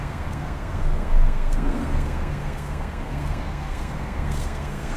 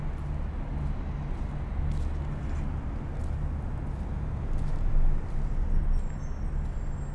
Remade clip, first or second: first